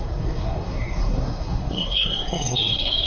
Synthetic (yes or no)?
yes